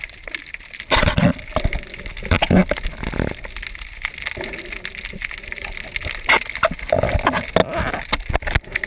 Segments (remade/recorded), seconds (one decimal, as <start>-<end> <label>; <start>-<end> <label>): 0.0-8.9 recorded